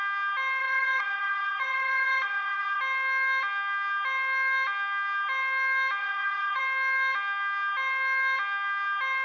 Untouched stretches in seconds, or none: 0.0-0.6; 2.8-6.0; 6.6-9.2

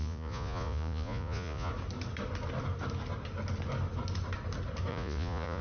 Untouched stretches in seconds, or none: 1.7-4.9

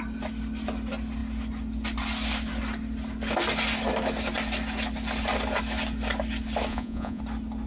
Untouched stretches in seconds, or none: 0.0-6.7; 7.2-7.7

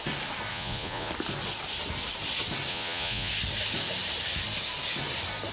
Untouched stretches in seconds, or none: 0.0-0.5; 1.1-2.7; 3.3-5.5

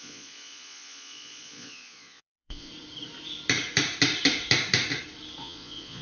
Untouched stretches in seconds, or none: 2.7-5.4

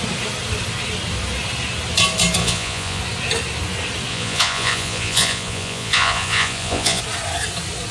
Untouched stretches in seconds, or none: 0.0-2.4; 3.0-4.1; 7.0-7.9